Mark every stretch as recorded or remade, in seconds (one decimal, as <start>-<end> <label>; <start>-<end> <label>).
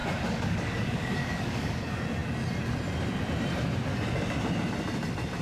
0.0-1.8 remade; 1.8-5.4 recorded